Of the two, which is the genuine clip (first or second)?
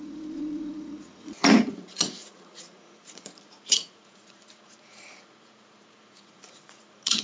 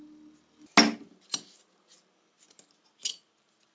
second